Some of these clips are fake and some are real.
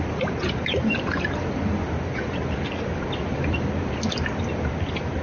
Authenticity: real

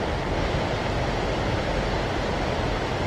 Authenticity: real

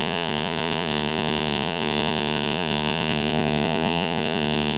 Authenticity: fake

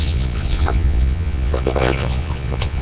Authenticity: fake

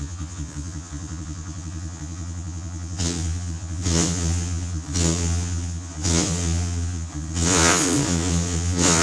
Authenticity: fake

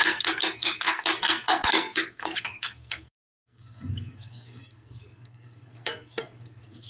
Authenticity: fake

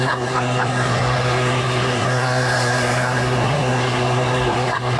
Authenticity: fake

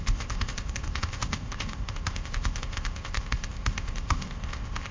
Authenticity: fake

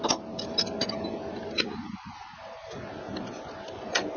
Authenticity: real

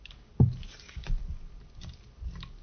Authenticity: real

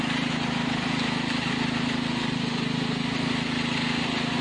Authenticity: real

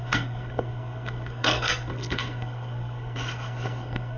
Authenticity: fake